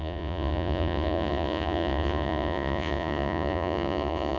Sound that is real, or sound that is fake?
fake